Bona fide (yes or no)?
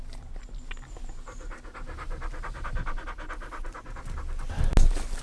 yes